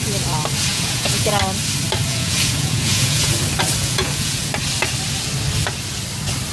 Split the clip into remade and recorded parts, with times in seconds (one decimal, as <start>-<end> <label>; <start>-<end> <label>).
0.0-0.7 recorded; 0.7-1.3 remade; 1.3-2.1 recorded; 2.1-3.3 remade; 3.3-3.8 recorded; 3.8-4.5 remade; 4.5-6.5 recorded